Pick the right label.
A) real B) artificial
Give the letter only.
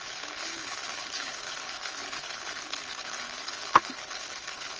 B